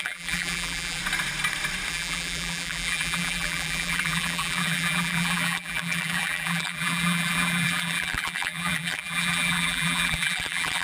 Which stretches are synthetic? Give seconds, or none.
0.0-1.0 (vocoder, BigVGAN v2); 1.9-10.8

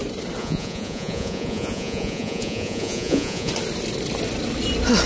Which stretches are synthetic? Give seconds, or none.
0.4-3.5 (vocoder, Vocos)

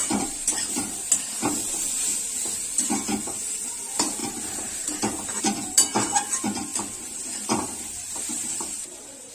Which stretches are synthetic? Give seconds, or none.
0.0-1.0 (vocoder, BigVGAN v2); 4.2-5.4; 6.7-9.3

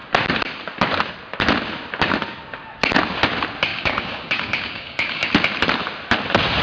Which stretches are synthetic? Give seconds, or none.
3.7-5.3 (codec, DAC)